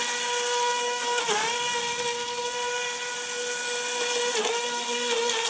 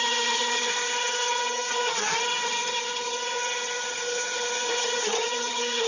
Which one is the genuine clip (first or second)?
first